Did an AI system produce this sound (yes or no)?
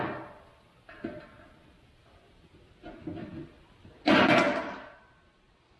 no